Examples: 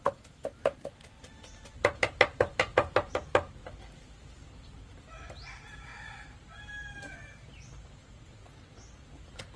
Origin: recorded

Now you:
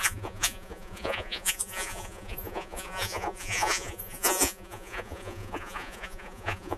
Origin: remade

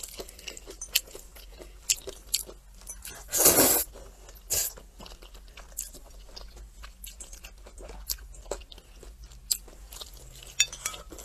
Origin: recorded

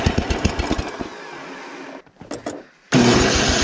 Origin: recorded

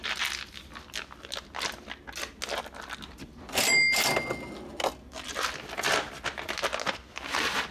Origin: recorded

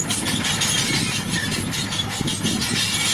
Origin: recorded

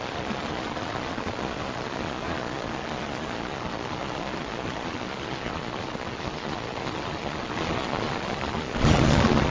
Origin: remade